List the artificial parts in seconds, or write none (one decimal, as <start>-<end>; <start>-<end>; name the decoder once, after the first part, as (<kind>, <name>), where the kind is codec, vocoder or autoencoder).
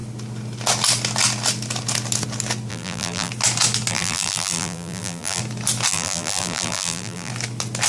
2.7-3.3 (vocoder, BigVGAN v2); 3.9-5.4; 5.9-7.3